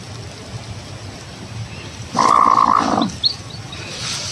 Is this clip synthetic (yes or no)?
no